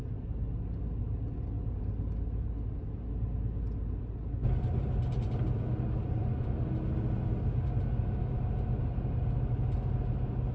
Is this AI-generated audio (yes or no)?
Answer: no